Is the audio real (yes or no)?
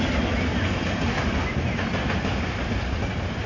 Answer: yes